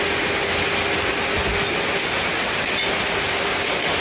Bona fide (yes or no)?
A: yes